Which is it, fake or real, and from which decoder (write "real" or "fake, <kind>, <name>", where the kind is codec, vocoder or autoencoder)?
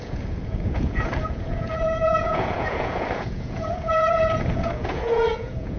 fake, vocoder, Vocos